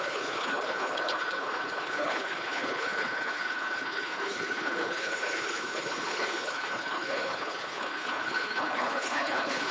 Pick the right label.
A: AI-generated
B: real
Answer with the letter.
A